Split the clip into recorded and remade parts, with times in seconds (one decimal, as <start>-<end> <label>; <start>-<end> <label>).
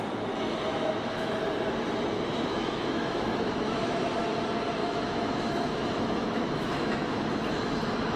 0.0-0.7 recorded; 0.7-1.4 remade; 1.4-2.5 recorded; 2.5-4.0 remade; 4.0-4.8 recorded; 4.8-7.3 remade; 7.3-8.2 recorded